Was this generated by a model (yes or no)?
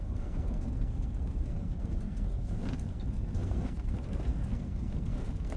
yes